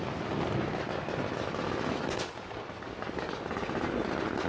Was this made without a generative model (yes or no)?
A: yes